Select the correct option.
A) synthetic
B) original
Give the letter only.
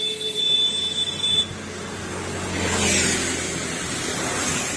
B